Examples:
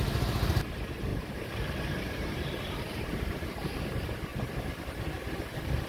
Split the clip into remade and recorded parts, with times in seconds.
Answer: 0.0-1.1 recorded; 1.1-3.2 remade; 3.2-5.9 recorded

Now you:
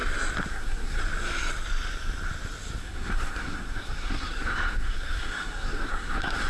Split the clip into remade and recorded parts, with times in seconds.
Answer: 0.0-0.5 recorded; 0.5-1.0 remade; 1.0-2.8 recorded; 2.8-6.5 remade

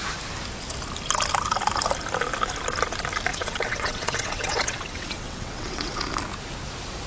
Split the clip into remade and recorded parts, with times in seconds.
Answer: 0.0-3.3 recorded; 3.3-6.0 remade; 6.0-7.1 recorded

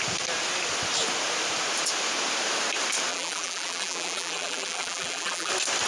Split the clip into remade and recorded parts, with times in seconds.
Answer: 0.0-3.1 recorded; 3.1-5.5 remade; 5.5-5.9 recorded